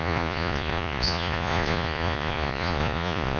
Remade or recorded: remade